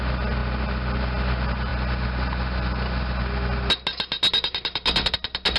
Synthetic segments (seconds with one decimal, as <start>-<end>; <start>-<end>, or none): none